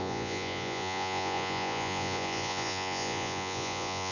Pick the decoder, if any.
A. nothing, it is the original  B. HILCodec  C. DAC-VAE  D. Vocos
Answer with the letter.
D